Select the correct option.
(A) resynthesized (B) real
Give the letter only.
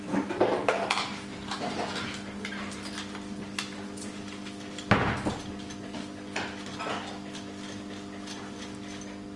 B